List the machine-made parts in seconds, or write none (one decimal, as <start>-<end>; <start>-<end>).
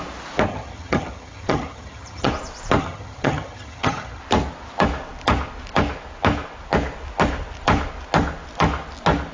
0.5-2.3; 2.8-4.2